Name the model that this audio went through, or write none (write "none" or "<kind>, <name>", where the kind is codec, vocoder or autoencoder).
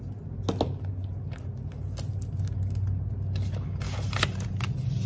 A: none